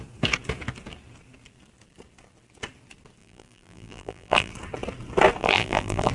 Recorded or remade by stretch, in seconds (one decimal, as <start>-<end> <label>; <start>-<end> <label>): 0.0-3.2 recorded; 3.2-4.5 remade; 4.5-5.4 recorded; 5.4-6.1 remade